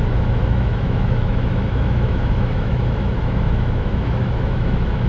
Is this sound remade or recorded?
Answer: remade